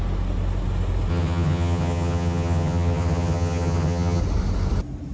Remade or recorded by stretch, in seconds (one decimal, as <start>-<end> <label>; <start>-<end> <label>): 0.0-1.1 recorded; 1.1-4.2 remade; 4.2-5.1 recorded